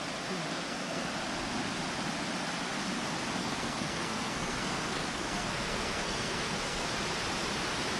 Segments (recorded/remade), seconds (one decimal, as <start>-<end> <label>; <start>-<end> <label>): 0.0-0.5 recorded; 0.5-1.1 remade; 1.1-3.4 recorded; 3.4-6.9 remade; 6.9-8.0 recorded